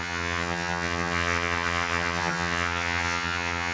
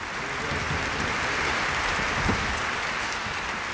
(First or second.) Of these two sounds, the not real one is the first